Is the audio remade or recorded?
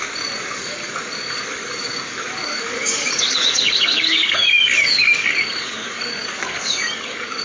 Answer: remade